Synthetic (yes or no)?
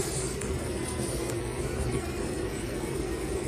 yes